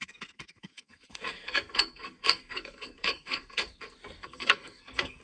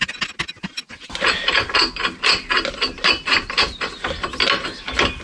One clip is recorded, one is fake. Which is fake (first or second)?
first